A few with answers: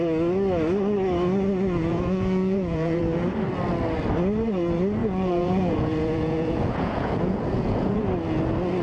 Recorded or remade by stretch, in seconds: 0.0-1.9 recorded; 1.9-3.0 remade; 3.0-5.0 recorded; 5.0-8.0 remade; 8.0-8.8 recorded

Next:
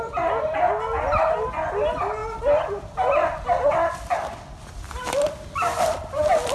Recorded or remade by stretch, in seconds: 0.0-6.5 recorded

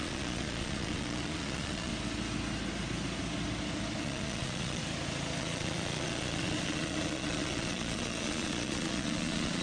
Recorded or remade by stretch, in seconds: 0.0-1.9 remade; 1.9-4.0 recorded; 4.0-4.8 remade; 4.8-5.4 recorded; 5.4-9.6 remade

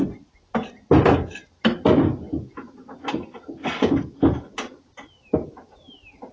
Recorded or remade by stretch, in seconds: 0.0-6.3 recorded

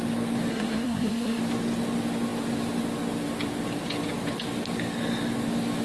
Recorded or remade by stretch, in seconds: 0.0-0.5 recorded; 0.5-1.4 remade; 1.4-5.8 recorded